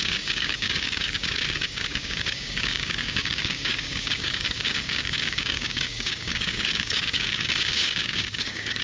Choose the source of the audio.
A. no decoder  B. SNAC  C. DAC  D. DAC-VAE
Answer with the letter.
C